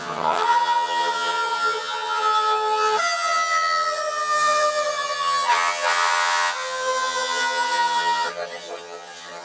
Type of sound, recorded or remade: remade